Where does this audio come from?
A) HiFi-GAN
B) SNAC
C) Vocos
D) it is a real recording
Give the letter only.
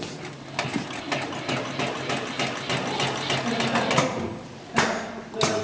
D